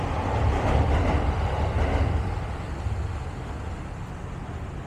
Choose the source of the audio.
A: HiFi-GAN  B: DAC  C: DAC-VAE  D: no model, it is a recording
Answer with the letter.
D